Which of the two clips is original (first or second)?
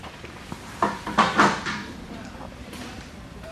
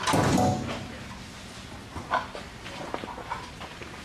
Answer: second